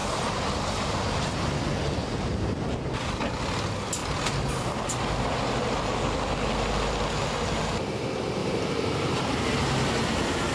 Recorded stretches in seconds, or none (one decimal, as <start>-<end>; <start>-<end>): 1.6-2.0; 2.6-8.4; 9.5-10.5